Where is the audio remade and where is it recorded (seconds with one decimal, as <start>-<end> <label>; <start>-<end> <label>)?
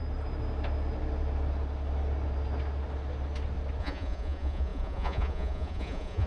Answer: 0.0-3.8 recorded; 3.8-6.3 remade